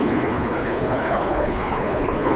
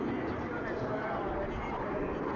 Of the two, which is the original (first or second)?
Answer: second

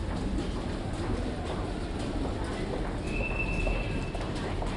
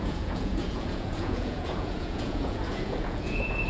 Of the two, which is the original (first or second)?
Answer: first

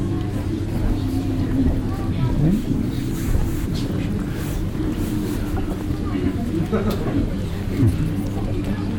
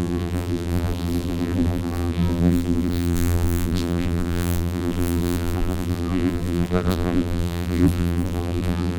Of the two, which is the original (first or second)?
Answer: first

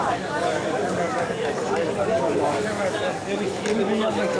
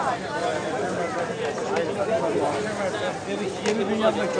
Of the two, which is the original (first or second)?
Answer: second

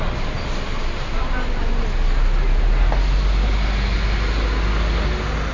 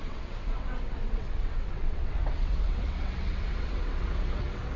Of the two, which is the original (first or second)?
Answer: first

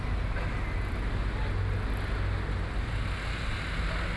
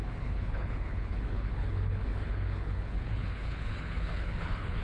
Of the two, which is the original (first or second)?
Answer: first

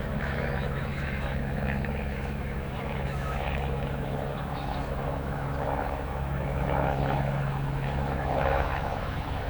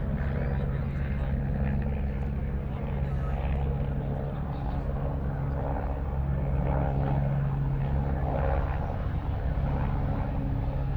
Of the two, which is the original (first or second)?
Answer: second